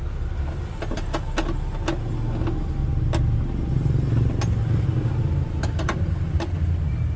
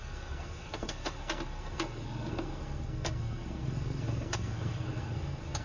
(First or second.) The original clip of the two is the first